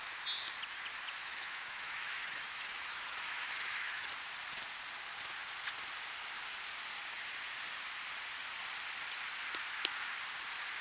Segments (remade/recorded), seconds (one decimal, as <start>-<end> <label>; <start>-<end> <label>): 0.0-1.2 recorded; 1.2-4.1 remade; 4.1-10.8 recorded